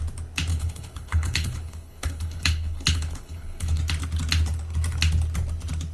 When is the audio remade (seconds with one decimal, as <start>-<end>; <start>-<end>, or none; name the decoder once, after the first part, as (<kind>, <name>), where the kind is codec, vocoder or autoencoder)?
0.5-3.8 (codec, HILCodec)